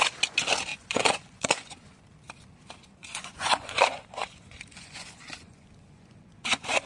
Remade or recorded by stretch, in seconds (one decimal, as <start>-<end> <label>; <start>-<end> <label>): 0.0-0.7 recorded; 0.7-2.0 remade; 2.0-3.0 recorded; 3.0-6.9 remade